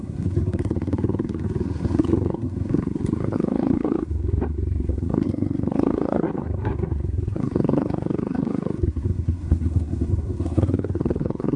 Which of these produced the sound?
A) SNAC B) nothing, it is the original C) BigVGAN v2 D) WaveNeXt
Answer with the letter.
A